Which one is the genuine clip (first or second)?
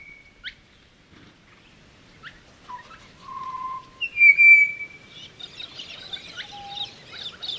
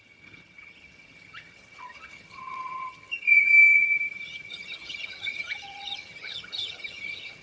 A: first